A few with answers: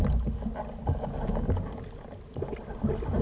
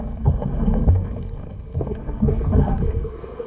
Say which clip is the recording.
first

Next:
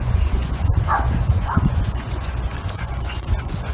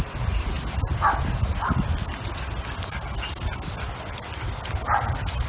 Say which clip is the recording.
second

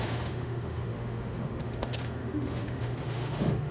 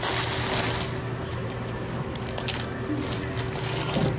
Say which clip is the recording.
second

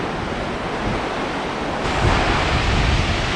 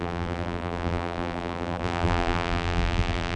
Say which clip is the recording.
first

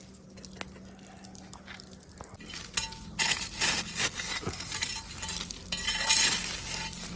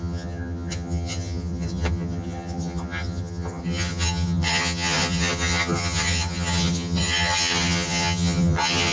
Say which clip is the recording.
first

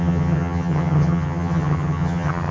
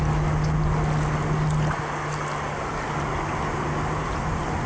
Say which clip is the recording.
second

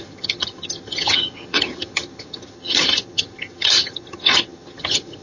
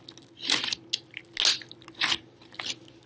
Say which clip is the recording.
second